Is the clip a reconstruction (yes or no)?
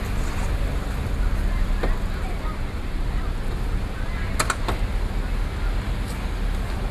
no